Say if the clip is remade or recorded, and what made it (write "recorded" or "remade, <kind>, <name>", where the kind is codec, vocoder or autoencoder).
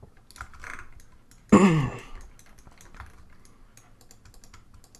recorded